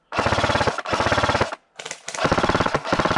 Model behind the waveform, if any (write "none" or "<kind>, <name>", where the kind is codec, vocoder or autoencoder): none